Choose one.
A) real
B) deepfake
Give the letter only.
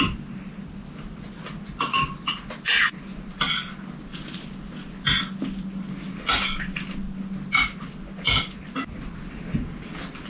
A